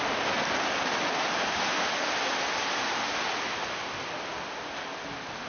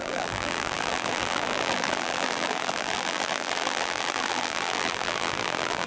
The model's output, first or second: second